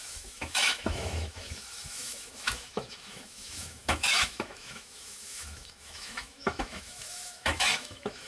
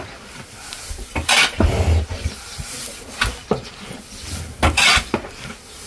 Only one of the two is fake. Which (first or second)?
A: first